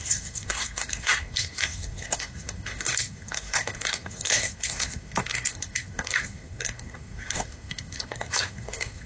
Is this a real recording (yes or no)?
no